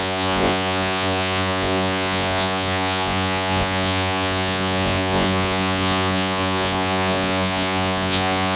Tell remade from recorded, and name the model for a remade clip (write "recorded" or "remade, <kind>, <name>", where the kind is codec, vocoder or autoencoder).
remade, vocoder, Vocos